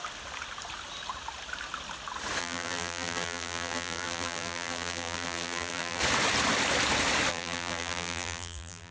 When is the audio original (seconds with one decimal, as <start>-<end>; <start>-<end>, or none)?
0.0-2.4; 6.0-7.3